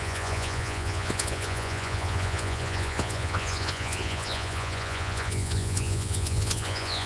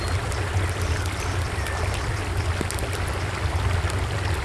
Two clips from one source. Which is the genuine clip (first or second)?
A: second